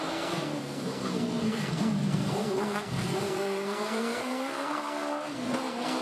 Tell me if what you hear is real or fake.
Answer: fake